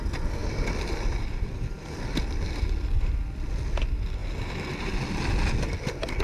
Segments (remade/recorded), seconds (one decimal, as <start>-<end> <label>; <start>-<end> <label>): 0.0-6.2 recorded